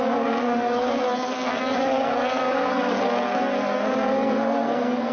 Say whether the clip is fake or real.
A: fake